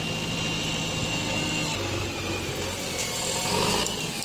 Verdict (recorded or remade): recorded